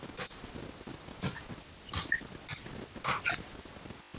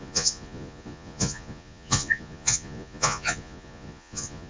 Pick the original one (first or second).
first